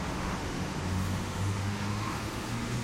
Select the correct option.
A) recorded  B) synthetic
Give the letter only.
B